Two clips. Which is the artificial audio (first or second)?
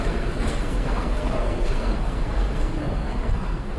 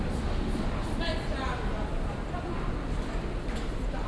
first